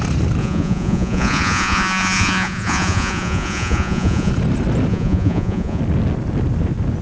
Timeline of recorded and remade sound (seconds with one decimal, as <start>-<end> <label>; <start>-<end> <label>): 0.0-0.4 recorded; 0.4-4.3 remade; 4.3-4.9 recorded; 4.9-5.8 remade; 5.8-7.0 recorded